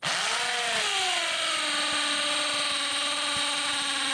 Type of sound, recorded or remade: recorded